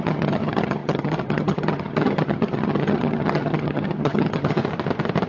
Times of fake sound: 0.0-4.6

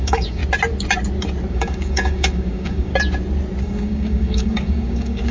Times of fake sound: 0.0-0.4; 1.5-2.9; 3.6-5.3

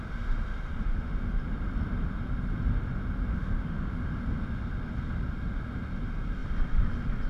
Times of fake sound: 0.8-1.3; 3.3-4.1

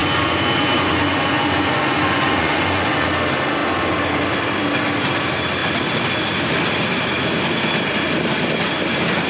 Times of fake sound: 0.0-3.1